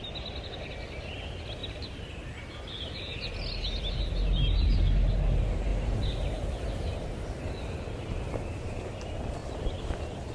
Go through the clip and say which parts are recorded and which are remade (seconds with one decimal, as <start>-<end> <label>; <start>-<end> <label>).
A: 0.0-5.7 recorded; 5.7-7.2 remade; 7.2-10.3 recorded